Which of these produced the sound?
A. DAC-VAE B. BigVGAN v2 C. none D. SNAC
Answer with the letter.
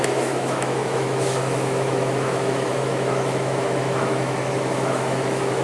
A